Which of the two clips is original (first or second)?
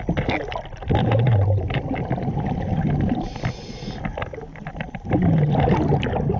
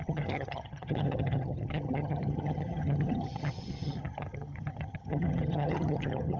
first